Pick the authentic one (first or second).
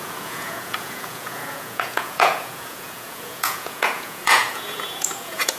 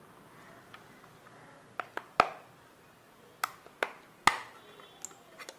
second